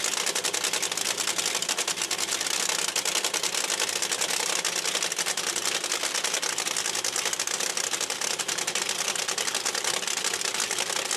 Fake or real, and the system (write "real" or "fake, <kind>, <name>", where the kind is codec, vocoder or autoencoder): real